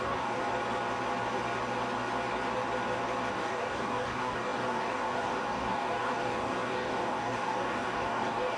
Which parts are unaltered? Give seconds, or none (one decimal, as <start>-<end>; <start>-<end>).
0.4-3.3